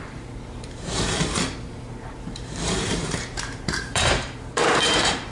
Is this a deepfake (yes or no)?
yes